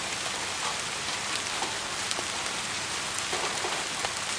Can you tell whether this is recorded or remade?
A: recorded